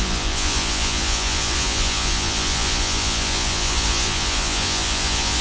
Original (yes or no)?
no